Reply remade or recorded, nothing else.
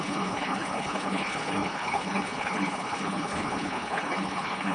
remade